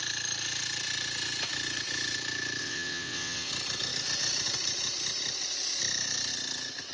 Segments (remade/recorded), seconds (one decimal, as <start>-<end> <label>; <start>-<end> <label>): 0.0-2.6 recorded; 2.6-3.5 remade; 3.5-6.9 recorded